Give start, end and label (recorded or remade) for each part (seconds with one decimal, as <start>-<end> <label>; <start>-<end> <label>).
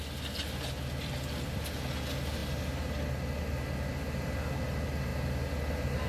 0.0-6.1 recorded